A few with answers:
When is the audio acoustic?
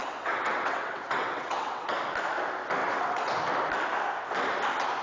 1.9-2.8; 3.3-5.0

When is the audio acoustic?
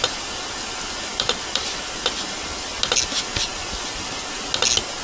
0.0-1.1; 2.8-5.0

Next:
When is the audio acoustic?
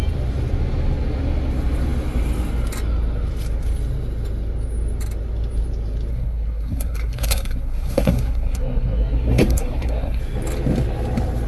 0.0-6.1; 10.2-11.5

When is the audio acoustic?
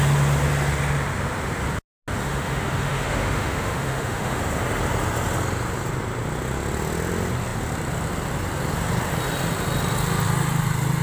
0.0-2.2; 4.4-11.0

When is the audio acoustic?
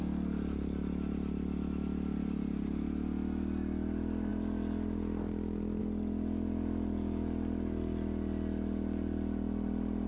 0.0-10.1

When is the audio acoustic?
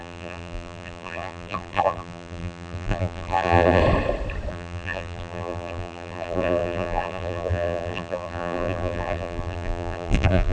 3.8-4.5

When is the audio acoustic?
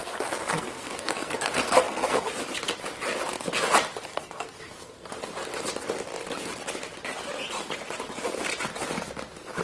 2.3-4.1; 5.1-9.6